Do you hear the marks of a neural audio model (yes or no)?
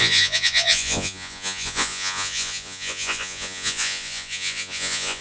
yes